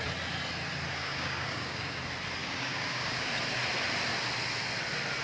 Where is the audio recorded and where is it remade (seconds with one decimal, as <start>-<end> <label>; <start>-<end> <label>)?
0.0-0.9 recorded; 0.9-2.0 remade; 2.0-2.4 recorded; 2.4-3.3 remade; 3.3-5.2 recorded